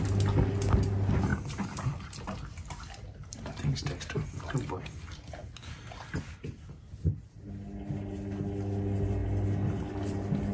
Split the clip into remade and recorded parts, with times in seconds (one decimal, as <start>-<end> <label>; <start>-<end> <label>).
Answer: 0.0-10.5 recorded